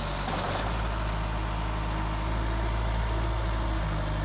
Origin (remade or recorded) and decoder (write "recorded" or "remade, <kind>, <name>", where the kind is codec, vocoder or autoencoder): recorded